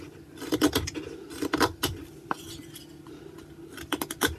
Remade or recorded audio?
recorded